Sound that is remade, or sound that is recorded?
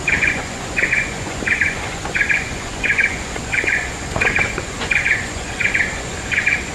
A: remade